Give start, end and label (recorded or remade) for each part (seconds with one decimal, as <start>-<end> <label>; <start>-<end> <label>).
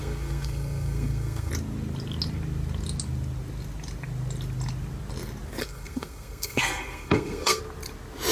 0.0-1.5 remade; 1.5-5.6 recorded; 5.6-7.6 remade; 7.6-8.3 recorded